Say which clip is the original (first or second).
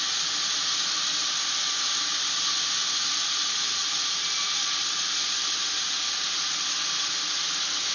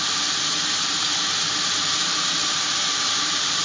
first